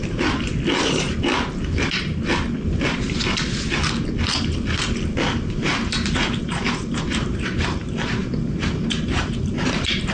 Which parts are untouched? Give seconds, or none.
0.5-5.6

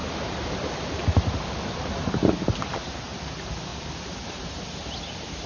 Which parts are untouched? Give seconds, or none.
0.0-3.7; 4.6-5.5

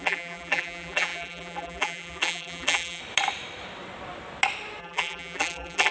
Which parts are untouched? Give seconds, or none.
3.0-4.8

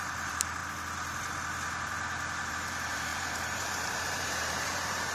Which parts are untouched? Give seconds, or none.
0.6-2.5